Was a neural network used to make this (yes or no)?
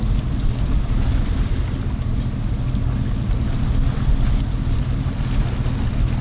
no